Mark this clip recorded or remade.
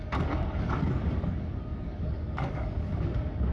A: remade